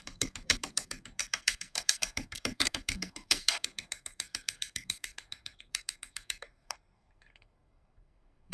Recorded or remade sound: remade